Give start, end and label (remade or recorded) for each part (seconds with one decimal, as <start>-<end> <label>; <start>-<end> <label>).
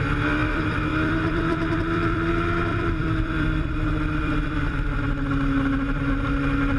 0.0-0.4 recorded; 0.4-2.3 remade; 2.3-2.7 recorded; 2.7-5.0 remade; 5.0-6.8 recorded